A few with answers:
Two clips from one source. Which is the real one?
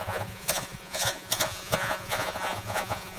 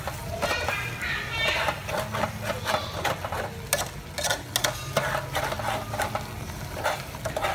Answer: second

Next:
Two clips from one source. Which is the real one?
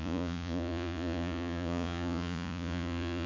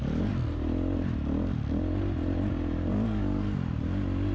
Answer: second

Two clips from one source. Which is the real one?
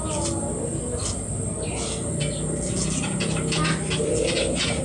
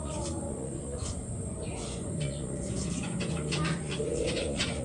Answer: first